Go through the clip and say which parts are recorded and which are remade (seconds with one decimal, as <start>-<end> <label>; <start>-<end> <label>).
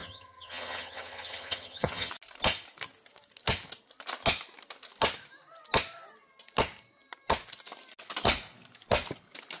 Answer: 0.0-2.1 remade; 2.1-9.6 recorded